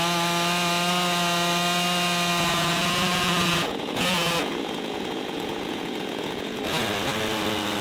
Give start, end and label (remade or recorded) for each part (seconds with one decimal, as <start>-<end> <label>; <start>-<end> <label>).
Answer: 0.0-2.5 recorded; 2.5-6.6 remade; 6.6-7.8 recorded